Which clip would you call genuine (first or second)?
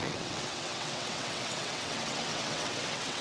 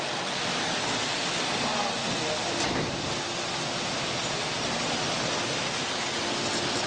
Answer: second